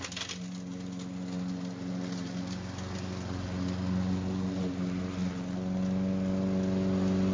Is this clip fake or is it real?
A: real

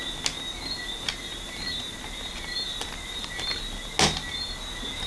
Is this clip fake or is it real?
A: real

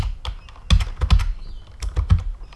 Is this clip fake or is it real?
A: real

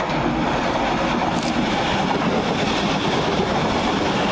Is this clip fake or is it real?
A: real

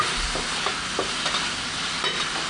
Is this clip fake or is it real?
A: real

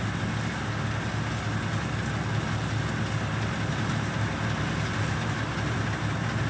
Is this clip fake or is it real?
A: real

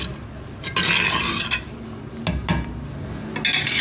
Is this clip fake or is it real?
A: real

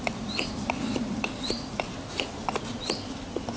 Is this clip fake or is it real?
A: real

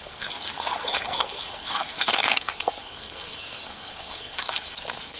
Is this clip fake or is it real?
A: fake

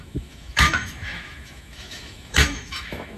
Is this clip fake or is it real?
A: fake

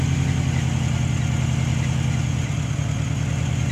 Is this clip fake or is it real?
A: real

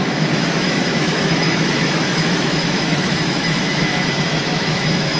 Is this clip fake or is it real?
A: fake